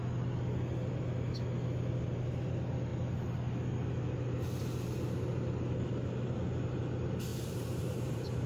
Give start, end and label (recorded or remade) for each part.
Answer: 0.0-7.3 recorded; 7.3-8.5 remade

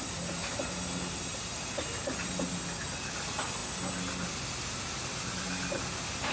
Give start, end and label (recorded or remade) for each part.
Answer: 0.0-6.3 recorded

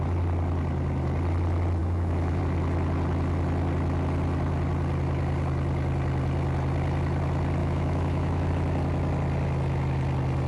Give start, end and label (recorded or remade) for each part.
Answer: 0.0-1.8 recorded; 1.8-2.4 remade; 2.4-7.6 recorded; 7.6-8.5 remade; 8.5-10.5 recorded

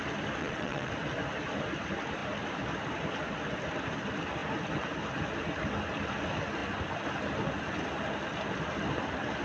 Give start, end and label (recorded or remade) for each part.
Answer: 0.0-0.4 recorded; 0.4-0.9 remade; 0.9-9.4 recorded

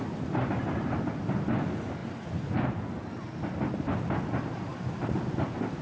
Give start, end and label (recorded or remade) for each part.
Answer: 0.0-5.8 recorded

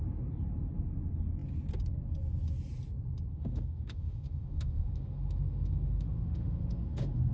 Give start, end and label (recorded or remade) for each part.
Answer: 0.0-3.3 recorded; 3.3-7.3 remade